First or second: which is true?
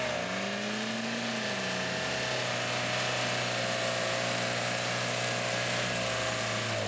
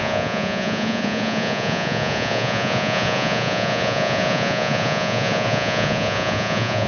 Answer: first